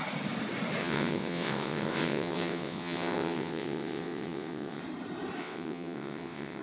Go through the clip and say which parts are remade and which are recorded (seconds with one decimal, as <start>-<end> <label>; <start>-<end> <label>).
0.0-0.8 recorded; 0.8-4.8 remade; 4.8-5.4 recorded; 5.4-6.6 remade